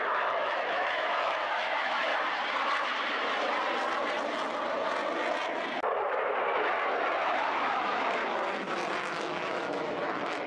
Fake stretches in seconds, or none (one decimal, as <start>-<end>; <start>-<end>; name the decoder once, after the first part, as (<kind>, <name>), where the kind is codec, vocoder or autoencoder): 0.0-2.1 (autoencoder, DAC-VAE); 7.2-8.2; 9.1-10.5